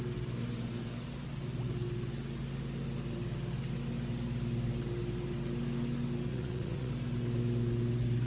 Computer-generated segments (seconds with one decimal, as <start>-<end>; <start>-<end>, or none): 6.3-6.9